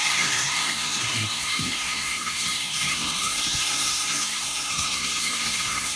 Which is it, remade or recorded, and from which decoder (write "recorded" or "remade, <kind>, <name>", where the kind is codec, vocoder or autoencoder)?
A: remade, codec, SNAC